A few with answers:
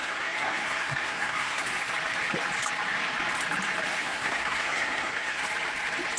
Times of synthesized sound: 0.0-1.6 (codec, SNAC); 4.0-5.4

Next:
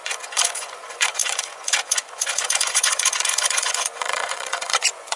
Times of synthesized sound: 0.0-5.2 (vocoder, Vocos)

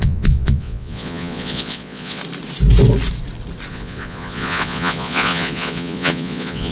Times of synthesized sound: 0.0-2.2 (vocoder, Vocos); 3.7-6.7

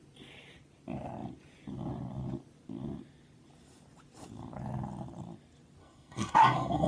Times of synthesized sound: 5.8-6.9 (codec, SNAC)

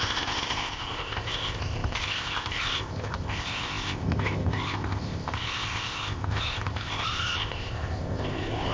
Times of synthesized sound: 0.0-8.7 (codec, ZipCodec)